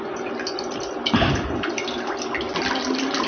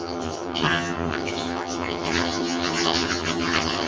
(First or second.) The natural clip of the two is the first